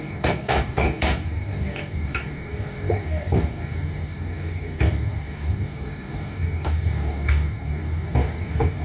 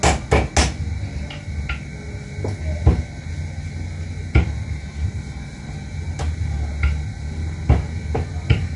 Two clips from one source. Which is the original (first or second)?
second